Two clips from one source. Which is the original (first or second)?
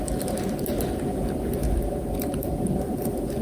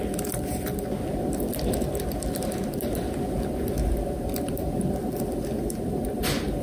first